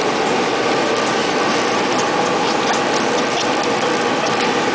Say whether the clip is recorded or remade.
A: recorded